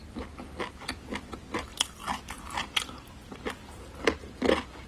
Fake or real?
real